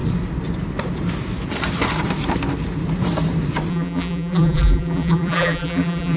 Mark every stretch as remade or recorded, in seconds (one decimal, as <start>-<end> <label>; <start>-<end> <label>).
0.0-3.7 recorded; 3.7-6.2 remade